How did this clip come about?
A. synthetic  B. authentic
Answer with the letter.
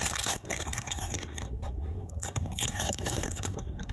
A